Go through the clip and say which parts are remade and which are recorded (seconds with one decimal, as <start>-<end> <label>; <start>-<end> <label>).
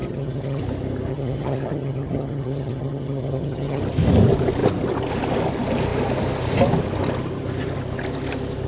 0.0-0.6 remade; 0.6-1.1 recorded; 1.1-3.8 remade; 3.8-8.7 recorded